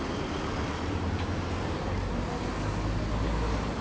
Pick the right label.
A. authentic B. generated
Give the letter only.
A